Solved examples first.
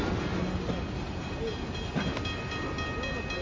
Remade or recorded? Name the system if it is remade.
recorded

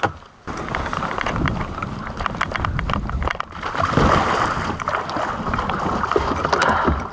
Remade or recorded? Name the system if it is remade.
recorded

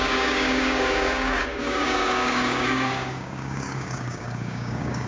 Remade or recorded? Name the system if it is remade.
remade, codec, DAC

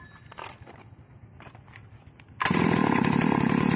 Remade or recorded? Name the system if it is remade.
recorded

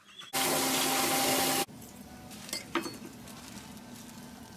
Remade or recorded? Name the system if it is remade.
recorded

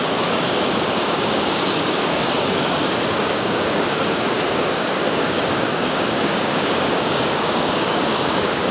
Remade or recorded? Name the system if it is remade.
remade, codec, DAC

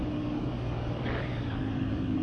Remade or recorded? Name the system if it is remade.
remade, codec, DAC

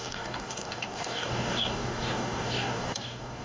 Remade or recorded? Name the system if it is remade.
remade, codec, DAC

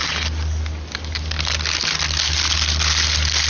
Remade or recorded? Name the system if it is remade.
recorded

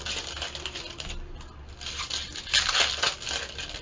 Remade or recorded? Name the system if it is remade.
recorded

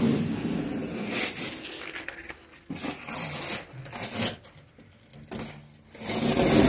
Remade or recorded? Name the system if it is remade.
recorded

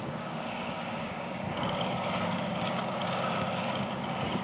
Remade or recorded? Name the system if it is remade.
remade, codec, DAC